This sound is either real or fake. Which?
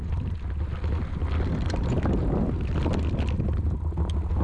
real